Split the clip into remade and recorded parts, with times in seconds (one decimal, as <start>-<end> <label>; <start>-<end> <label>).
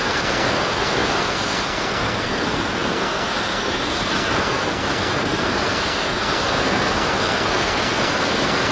0.0-8.7 remade